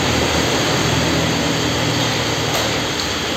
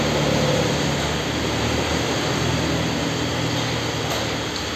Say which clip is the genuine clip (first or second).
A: second